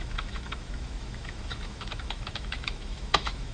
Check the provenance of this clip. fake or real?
fake